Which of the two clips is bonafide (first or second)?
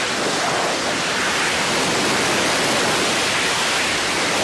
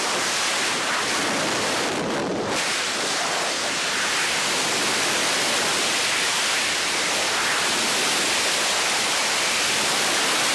first